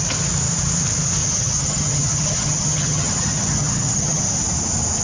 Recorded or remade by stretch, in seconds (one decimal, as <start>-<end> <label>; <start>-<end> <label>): 0.0-1.2 recorded; 1.2-4.2 remade; 4.2-5.0 recorded